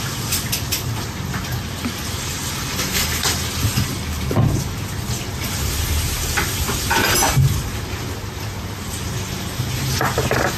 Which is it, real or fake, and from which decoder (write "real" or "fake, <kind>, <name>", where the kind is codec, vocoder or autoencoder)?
real